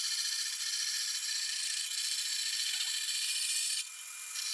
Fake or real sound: real